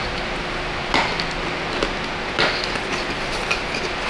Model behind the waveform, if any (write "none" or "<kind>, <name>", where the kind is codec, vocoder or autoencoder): none